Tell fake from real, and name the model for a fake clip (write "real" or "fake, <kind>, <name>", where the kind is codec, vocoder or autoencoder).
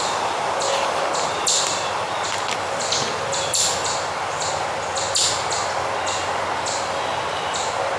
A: real